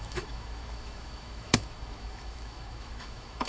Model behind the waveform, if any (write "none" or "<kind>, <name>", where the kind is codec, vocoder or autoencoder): autoencoder, DAC-VAE